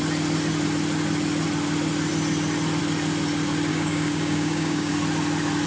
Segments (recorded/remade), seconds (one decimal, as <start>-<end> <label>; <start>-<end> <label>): 0.0-3.7 recorded; 3.7-4.9 remade; 4.9-5.7 recorded